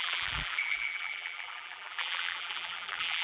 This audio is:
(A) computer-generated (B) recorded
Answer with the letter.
A